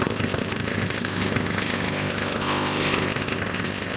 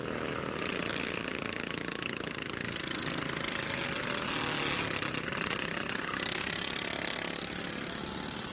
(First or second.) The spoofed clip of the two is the first